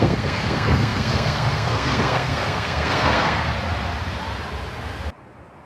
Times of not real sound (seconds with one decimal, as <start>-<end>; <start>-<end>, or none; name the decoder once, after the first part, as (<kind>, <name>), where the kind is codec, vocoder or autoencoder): 0.0-3.5 (codec, SNAC)